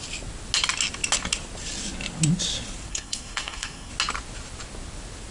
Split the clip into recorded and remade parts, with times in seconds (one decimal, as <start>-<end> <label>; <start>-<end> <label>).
0.0-2.9 recorded; 2.9-3.9 remade; 3.9-5.3 recorded